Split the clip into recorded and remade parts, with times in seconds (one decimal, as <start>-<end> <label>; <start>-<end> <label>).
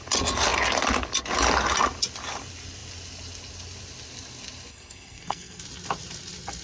0.0-4.7 recorded; 4.7-5.6 remade; 5.6-6.6 recorded